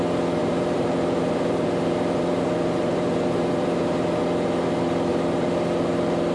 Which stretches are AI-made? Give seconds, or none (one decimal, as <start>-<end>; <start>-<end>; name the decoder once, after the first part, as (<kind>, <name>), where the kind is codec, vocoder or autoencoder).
0.4-4.2 (vocoder, BigVGAN v2); 5.1-6.3